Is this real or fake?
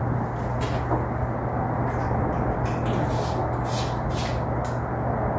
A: real